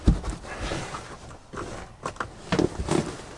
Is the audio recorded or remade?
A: recorded